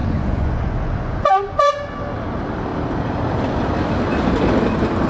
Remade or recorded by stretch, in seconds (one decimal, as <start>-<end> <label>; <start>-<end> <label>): 0.0-1.7 remade; 1.7-5.1 recorded